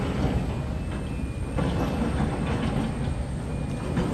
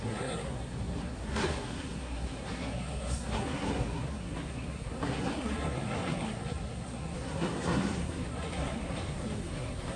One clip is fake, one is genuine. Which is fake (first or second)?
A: second